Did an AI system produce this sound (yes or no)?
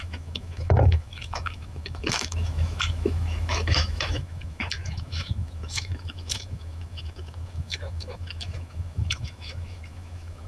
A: yes